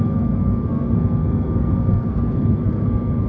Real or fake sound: fake